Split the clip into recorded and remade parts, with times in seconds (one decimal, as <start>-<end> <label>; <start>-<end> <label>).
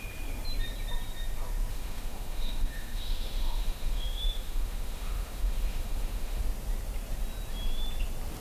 0.0-1.7 recorded; 1.7-6.4 remade; 6.4-8.4 recorded